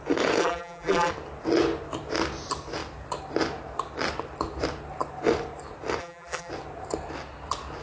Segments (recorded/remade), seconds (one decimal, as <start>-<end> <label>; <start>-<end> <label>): 0.0-0.4 recorded; 0.4-1.1 remade; 1.1-6.0 recorded; 6.0-6.5 remade; 6.5-7.8 recorded